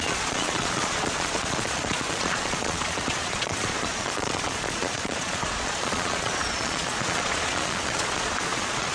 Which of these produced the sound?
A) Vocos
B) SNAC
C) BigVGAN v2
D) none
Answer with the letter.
A